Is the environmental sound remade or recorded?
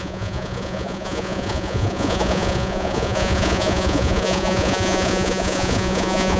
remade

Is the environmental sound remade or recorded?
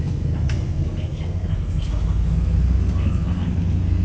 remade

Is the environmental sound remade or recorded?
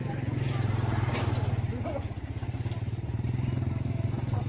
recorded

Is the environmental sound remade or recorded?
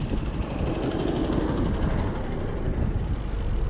recorded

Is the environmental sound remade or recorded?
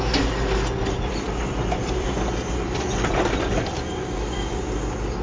recorded